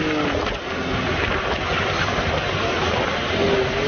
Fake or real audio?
real